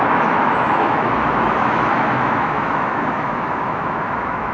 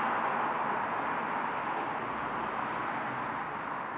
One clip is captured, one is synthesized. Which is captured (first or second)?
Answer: second